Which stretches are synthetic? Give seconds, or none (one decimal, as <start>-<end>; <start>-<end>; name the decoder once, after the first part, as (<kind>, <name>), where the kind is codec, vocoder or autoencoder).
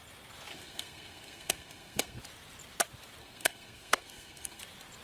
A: 0.5-2.2 (codec, SNAC); 3.2-4.6